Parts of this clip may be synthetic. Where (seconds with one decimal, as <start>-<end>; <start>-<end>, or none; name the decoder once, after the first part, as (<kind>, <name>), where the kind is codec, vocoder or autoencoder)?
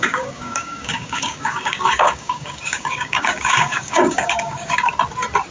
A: 0.0-4.9 (codec, DAC)